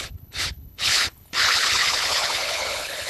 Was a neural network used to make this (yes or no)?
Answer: yes